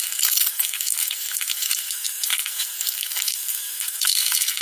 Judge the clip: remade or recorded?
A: remade